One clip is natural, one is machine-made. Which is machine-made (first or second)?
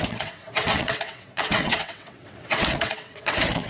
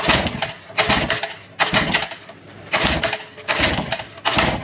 first